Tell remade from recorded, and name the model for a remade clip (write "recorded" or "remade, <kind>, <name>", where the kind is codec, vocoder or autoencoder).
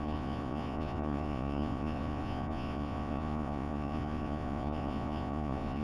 remade, vocoder, Vocos